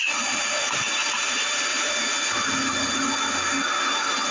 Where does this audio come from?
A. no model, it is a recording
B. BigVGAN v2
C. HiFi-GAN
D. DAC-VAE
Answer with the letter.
A